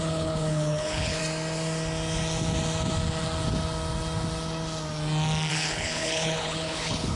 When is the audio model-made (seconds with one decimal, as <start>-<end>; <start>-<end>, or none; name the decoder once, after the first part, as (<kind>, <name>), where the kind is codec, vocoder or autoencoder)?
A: 0.0-1.2 (codec, HILCodec); 5.5-7.2

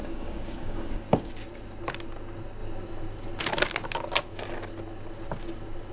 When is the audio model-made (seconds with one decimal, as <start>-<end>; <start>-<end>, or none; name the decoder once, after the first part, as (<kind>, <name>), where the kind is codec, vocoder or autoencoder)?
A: 0.0-1.3 (codec, DAC)

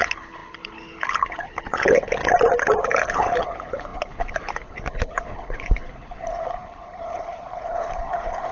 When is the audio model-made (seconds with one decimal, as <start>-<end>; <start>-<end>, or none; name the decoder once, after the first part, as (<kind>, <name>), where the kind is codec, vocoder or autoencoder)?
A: 0.0-2.2 (codec, HILCodec); 2.8-8.5

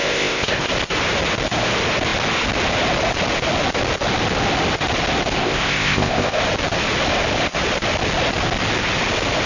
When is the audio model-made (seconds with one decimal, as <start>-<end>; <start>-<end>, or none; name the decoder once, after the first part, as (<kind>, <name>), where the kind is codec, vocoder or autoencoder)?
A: 0.0-0.7 (codec, ZipCodec); 5.4-6.4

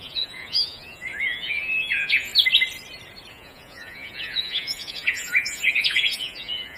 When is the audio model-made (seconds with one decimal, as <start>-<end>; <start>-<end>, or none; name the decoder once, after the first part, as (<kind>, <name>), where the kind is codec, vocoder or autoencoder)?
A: 0.0-2.3 (vocoder, Vocos); 3.3-6.8

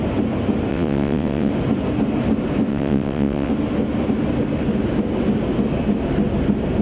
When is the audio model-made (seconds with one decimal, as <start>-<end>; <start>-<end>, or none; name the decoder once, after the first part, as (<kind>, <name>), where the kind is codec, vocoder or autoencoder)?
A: 0.7-1.5 (vocoder, WaveNeXt); 2.7-3.5

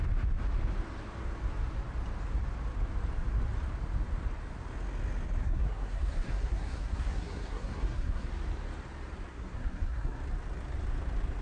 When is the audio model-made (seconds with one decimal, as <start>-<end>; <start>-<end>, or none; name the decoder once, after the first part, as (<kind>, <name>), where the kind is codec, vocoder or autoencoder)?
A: 5.4-8.3 (codec, SNAC); 9.3-10.2

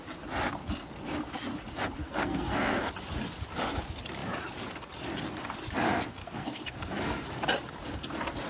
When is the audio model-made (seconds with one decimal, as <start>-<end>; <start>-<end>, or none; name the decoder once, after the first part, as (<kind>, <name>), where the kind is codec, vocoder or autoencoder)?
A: 2.0-2.8 (codec, SNAC); 6.2-6.9